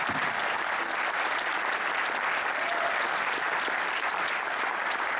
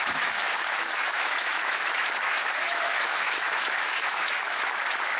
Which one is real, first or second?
first